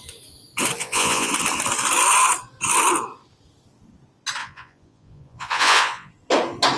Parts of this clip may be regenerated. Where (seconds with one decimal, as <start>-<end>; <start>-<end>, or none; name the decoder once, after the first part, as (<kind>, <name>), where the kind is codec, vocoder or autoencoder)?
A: 0.8-1.3 (vocoder, Vocos); 4.4-6.1